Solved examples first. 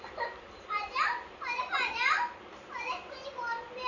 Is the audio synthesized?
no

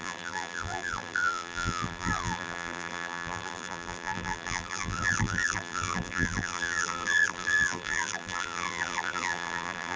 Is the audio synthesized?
yes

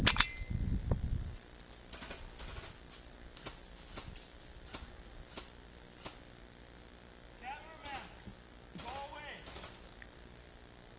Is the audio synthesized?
no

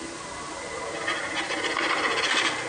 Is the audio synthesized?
no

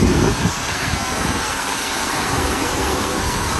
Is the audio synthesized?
yes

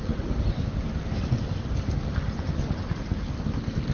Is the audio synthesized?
no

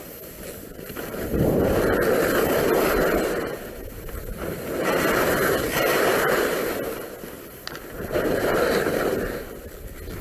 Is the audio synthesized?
no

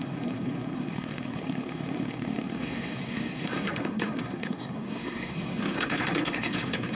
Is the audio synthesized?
yes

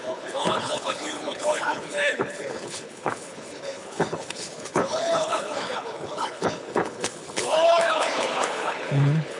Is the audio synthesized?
yes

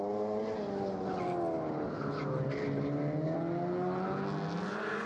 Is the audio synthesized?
no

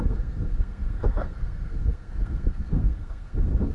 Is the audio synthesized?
yes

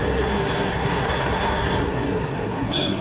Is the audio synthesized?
yes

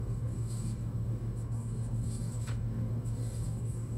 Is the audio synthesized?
yes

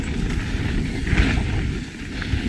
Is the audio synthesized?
no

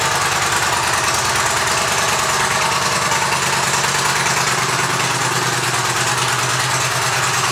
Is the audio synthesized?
no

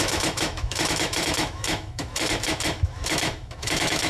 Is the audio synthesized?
yes